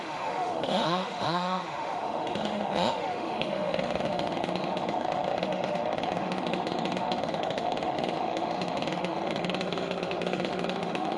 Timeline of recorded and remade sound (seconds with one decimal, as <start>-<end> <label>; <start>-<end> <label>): 0.0-11.2 remade